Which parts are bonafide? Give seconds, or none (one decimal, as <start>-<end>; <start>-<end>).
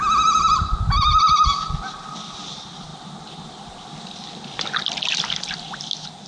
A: 0.0-1.1; 1.9-6.3